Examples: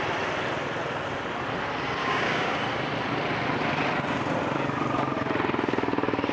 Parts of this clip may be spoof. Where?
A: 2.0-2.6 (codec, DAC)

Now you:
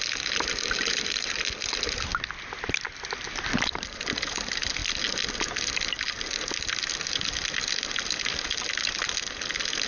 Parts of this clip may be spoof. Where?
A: none